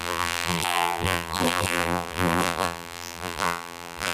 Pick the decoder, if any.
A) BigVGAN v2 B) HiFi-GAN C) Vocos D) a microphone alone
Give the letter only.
A